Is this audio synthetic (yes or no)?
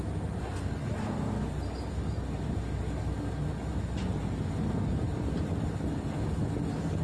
no